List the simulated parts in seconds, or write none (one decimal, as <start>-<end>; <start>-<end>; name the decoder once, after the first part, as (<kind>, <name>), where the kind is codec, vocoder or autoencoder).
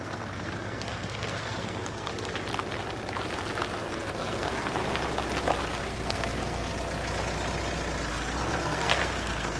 0.0-2.1 (codec, SNAC); 3.8-4.8; 5.8-6.7; 8.1-9.6